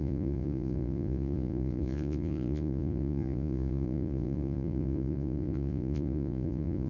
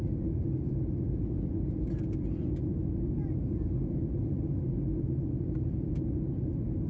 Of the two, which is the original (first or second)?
second